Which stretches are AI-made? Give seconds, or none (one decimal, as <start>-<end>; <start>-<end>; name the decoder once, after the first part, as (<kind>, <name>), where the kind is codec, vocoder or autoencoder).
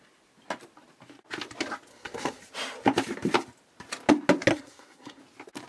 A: 1.9-2.4 (codec, SNAC); 4.5-5.2